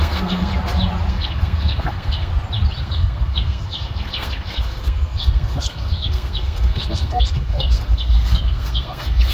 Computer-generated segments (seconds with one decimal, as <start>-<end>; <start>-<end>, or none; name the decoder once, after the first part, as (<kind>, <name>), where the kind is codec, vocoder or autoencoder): 0.0-0.5 (codec, SNAC); 1.1-2.3; 2.8-9.3